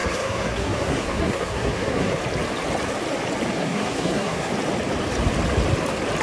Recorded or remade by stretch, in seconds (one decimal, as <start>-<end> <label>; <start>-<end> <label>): 0.0-2.2 remade; 2.2-3.6 recorded; 3.6-4.5 remade; 4.5-6.2 recorded

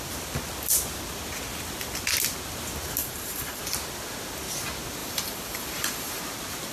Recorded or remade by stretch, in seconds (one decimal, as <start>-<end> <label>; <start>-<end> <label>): 0.0-3.0 recorded; 3.0-3.6 remade; 3.6-5.0 recorded; 5.0-6.2 remade; 6.2-6.7 recorded

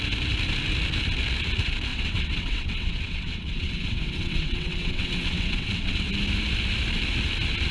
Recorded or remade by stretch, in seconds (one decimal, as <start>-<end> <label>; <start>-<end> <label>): 0.0-1.9 recorded; 1.9-6.1 remade; 6.1-7.7 recorded

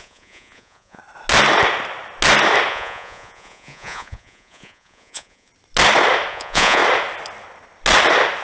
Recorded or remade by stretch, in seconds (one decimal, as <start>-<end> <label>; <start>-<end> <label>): 0.0-1.0 remade; 1.0-2.7 recorded; 2.7-5.5 remade; 5.5-6.3 recorded; 6.3-6.8 remade; 6.8-8.4 recorded